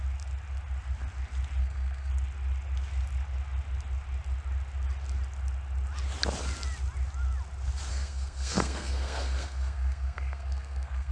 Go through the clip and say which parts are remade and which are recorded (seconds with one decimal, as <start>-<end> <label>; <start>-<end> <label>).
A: 0.0-1.6 recorded; 1.6-2.1 remade; 2.1-7.9 recorded; 7.9-11.1 remade